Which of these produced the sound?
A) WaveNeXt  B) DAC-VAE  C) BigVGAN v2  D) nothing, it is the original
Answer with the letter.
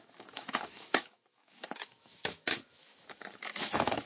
B